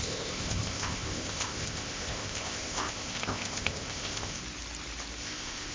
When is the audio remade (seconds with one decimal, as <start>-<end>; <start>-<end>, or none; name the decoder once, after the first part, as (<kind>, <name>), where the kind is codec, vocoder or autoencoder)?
0.0-4.4 (codec, ZipCodec); 5.2-5.7